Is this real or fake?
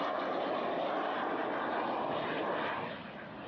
real